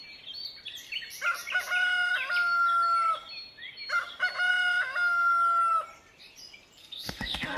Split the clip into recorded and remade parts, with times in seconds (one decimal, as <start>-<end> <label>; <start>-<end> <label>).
0.0-6.8 recorded; 6.8-7.6 remade